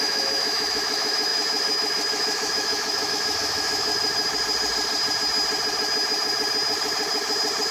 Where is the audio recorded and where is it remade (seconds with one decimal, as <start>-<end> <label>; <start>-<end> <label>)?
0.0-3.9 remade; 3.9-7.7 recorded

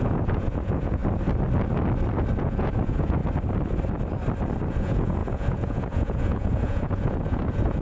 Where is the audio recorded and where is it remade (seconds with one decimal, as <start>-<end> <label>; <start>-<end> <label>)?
0.0-1.0 remade; 1.0-2.4 recorded; 2.4-3.2 remade; 3.2-4.7 recorded; 4.7-7.8 remade

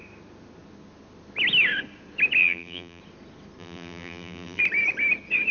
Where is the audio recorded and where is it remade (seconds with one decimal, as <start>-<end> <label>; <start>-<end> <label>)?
0.0-2.4 recorded; 2.4-3.0 remade; 3.0-3.6 recorded; 3.6-4.6 remade; 4.6-5.5 recorded

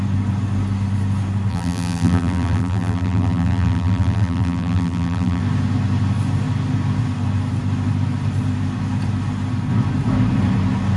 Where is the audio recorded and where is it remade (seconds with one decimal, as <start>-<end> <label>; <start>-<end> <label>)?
0.0-1.5 recorded; 1.5-5.4 remade; 5.4-11.0 recorded

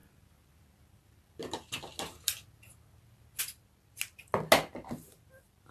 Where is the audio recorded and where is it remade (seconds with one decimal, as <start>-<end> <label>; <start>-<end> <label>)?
0.0-5.7 recorded